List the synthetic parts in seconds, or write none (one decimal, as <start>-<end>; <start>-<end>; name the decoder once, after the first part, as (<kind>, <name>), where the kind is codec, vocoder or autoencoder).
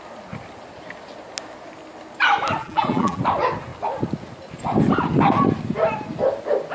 2.6-3.2 (vocoder, BigVGAN v2)